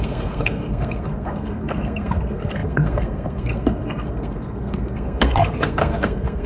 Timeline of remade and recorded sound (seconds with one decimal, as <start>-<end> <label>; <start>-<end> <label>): 0.0-6.5 remade